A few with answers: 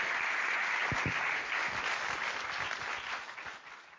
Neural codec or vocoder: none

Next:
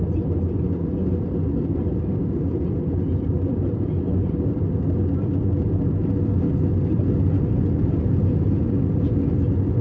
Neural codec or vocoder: none